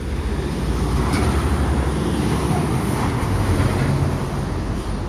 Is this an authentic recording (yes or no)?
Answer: no